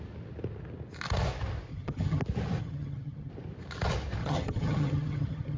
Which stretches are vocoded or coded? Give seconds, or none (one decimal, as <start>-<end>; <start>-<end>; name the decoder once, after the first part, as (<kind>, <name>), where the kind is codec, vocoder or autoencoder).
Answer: 1.7-2.2 (vocoder, HiFi-GAN); 2.6-3.3; 4.2-5.6